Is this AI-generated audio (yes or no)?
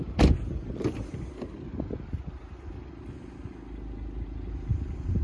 no